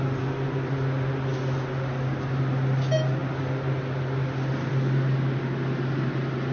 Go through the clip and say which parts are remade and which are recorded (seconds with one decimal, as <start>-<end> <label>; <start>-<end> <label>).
0.0-6.5 recorded